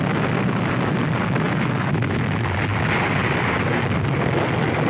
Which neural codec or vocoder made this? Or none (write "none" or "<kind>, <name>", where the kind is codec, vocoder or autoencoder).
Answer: none